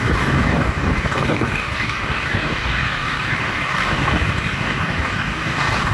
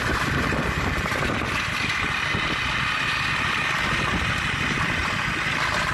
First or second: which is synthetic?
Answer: first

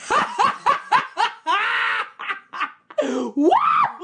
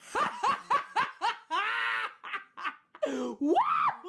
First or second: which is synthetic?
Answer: first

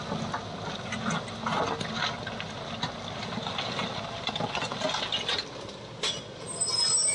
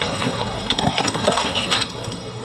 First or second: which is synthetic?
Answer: second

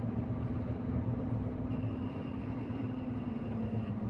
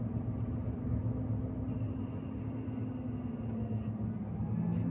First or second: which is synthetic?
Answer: first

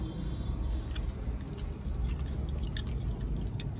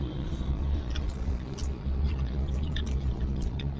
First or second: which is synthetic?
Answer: second